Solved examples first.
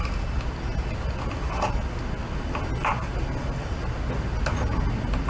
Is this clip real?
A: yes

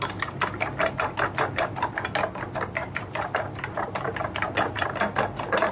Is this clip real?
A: yes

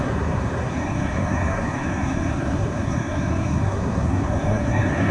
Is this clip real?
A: no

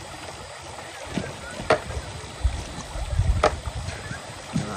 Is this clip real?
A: yes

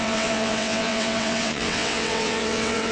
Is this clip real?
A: no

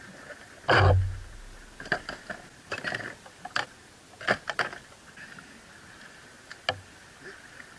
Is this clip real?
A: yes